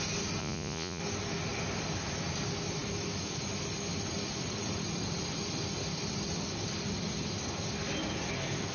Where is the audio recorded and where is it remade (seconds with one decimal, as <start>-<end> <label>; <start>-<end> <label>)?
0.0-0.4 recorded; 0.4-1.0 remade; 1.0-8.7 recorded